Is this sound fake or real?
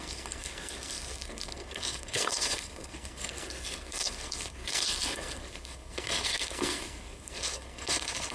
fake